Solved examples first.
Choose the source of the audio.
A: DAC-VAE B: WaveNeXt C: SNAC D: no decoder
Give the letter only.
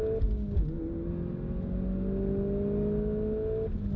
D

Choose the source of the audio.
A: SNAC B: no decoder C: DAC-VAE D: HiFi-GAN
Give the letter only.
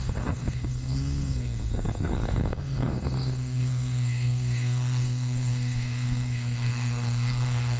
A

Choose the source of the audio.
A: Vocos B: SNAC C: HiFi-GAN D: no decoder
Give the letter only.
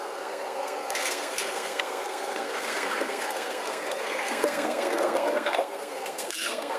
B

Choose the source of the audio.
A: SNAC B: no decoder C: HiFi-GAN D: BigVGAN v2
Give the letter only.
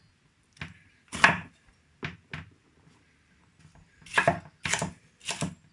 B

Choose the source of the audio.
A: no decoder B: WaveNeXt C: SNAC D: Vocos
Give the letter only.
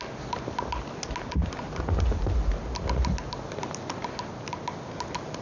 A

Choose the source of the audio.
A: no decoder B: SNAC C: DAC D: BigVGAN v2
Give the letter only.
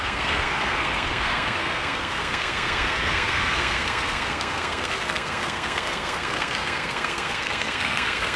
B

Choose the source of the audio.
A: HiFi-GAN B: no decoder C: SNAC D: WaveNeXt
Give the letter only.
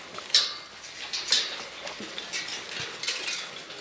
B